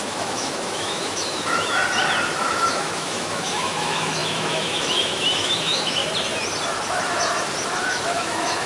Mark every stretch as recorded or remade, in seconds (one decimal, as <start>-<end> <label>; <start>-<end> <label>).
0.0-1.8 remade; 1.8-2.4 recorded; 2.4-6.0 remade; 6.0-7.9 recorded; 7.9-8.7 remade